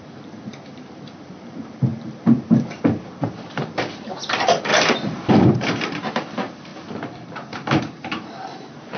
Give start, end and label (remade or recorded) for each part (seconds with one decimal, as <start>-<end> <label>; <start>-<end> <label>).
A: 0.0-4.7 remade; 4.7-5.3 recorded; 5.3-9.0 remade